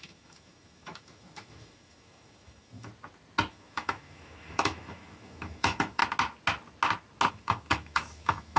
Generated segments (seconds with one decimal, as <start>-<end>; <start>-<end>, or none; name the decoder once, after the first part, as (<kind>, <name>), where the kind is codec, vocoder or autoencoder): 0.0-2.9 (autoencoder, DAC-VAE); 3.5-6.0; 7.3-8.6